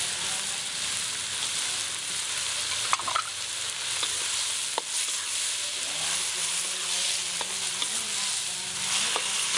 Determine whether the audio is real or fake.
real